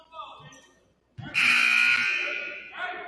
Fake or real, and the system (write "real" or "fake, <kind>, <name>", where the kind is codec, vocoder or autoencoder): real